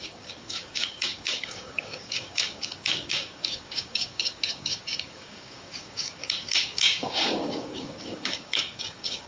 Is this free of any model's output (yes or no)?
no